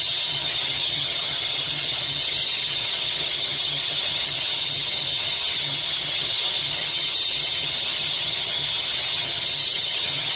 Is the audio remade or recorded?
remade